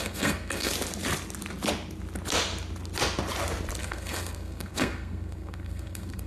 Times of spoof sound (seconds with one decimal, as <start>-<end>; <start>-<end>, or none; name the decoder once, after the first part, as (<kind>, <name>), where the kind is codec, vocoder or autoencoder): 0.0-0.7 (codec, SNAC); 3.8-6.3